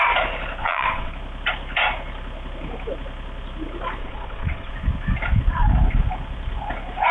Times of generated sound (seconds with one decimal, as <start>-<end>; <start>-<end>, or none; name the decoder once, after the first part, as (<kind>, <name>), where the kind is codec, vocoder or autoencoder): 0.6-1.1 (vocoder, WaveNeXt); 4.0-4.7